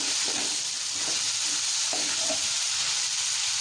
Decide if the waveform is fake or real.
real